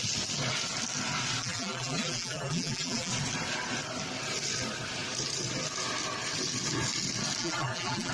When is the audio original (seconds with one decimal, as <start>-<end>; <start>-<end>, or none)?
0.0-1.4; 3.1-7.4